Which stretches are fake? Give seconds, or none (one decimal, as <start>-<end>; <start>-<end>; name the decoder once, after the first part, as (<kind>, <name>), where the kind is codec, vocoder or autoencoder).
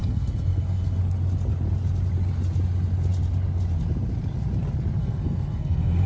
0.0-1.0 (codec, SNAC); 5.0-6.1